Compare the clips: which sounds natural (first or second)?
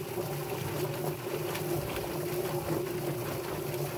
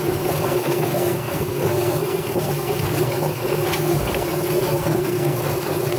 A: first